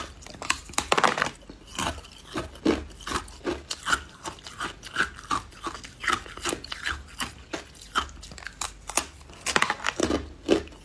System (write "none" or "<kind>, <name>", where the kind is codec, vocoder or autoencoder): none